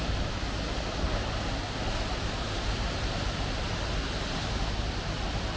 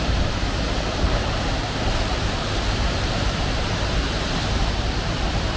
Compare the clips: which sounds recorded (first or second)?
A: first